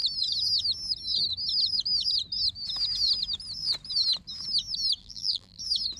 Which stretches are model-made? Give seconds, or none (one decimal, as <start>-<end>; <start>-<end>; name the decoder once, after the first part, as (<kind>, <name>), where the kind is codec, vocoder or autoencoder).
5.0-5.6 (vocoder, BigVGAN v2)